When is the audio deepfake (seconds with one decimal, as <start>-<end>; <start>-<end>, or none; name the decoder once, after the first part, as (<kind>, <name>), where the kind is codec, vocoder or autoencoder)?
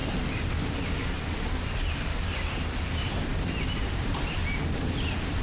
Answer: 0.8-4.4 (vocoder, BigVGAN v2)